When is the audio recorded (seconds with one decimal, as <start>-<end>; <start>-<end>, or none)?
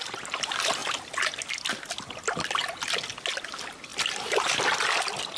0.8-2.1; 2.6-3.1